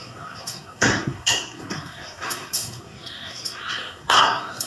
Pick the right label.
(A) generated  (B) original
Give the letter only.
A